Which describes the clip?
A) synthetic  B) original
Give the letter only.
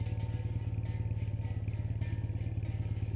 B